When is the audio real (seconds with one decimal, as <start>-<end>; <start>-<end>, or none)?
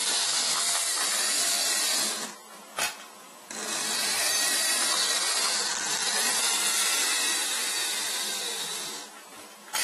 0.0-9.8